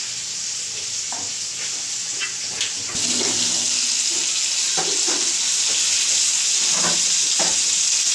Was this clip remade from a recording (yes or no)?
no